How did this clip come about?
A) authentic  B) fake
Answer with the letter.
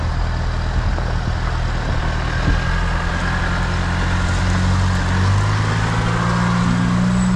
A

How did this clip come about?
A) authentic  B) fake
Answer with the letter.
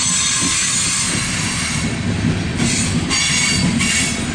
A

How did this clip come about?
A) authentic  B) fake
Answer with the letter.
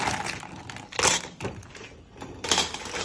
A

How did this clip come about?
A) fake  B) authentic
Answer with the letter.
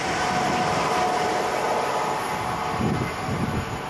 B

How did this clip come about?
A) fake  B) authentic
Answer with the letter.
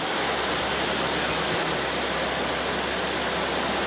B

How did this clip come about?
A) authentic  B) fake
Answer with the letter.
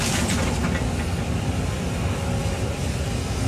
A